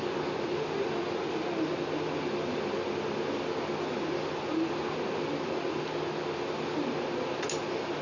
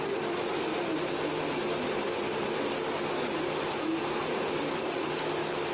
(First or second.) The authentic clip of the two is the first